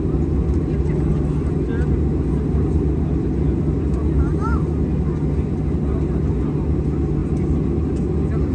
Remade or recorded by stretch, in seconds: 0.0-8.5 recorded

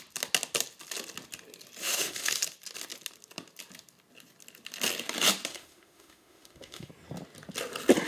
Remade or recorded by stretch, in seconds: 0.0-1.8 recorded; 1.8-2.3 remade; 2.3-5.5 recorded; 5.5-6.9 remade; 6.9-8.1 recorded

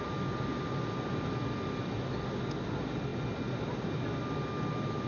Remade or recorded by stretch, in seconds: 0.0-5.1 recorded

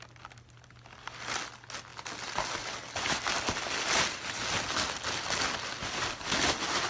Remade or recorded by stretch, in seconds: 0.0-6.9 recorded

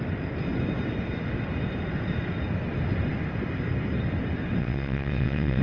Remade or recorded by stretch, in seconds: 0.0-4.6 recorded; 4.6-5.6 remade